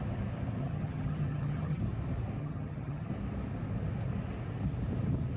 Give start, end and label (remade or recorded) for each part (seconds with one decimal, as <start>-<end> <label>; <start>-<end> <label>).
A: 0.0-0.6 recorded; 0.6-1.8 remade; 1.8-2.4 recorded; 2.4-3.1 remade; 3.1-5.4 recorded